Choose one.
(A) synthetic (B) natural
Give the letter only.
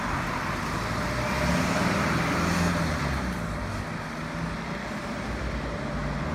B